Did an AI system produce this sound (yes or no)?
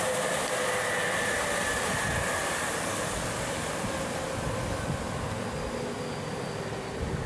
no